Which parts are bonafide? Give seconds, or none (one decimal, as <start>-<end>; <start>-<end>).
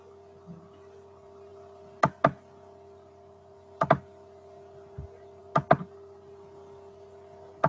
0.0-7.7